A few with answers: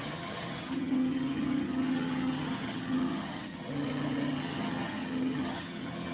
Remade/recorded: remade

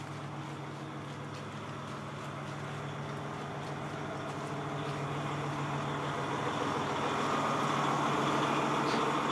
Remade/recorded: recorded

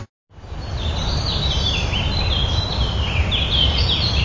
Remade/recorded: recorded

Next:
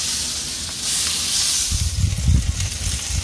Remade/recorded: recorded